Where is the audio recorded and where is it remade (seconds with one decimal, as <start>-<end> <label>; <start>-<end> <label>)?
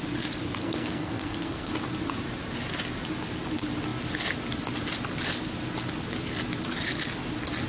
0.0-0.6 recorded; 0.6-1.7 remade; 1.7-7.7 recorded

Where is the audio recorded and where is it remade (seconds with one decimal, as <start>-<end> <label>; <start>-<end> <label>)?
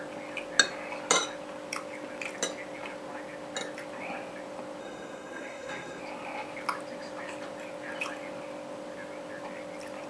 0.0-4.8 recorded; 4.8-6.0 remade; 6.0-10.1 recorded